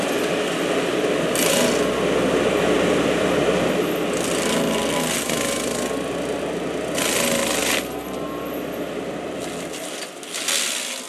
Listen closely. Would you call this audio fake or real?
real